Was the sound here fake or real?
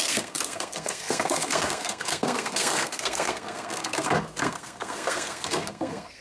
fake